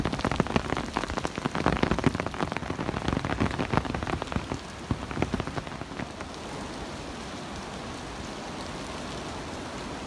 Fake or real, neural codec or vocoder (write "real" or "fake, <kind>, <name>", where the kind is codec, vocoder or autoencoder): real